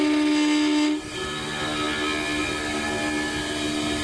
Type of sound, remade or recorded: recorded